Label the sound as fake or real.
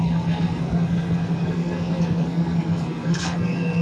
fake